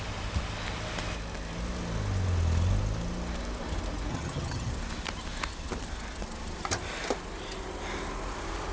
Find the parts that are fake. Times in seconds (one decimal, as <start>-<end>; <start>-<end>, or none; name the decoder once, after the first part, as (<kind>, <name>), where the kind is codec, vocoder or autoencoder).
4.1-4.7 (vocoder, HiFi-GAN)

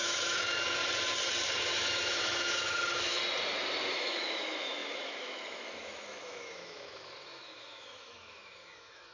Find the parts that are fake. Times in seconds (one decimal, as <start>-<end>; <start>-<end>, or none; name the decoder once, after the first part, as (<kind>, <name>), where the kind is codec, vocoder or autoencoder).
0.0-0.8 (autoencoder, DAC-VAE); 1.6-3.2; 3.9-9.1

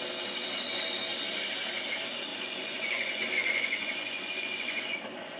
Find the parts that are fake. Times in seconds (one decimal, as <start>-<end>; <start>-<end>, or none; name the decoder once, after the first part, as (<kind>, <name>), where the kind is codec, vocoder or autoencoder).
2.3-5.4 (vocoder, Vocos)

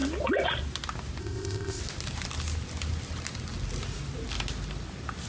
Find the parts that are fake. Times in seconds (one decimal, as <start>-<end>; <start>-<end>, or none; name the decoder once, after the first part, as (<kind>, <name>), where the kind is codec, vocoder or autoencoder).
1.2-1.8 (codec, ZipCodec)

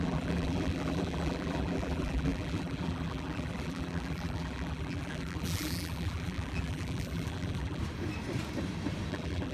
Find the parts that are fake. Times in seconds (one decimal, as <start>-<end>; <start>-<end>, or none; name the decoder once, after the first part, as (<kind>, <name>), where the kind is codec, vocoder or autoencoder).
0.0-7.8 (vocoder, BigVGAN v2); 9.1-9.5